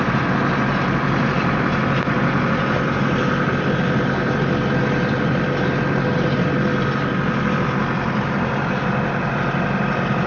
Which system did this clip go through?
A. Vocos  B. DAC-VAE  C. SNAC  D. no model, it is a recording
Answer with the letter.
D